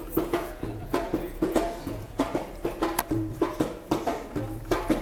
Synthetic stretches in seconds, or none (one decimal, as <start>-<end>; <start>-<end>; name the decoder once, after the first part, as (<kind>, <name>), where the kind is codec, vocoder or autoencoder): 0.0-2.3 (vocoder, Vocos)